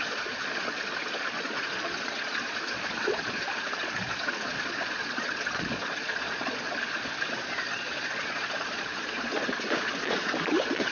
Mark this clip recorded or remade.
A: remade